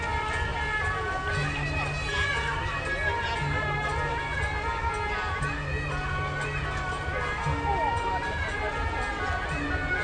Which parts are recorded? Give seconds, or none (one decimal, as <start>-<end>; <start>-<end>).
0.0-10.0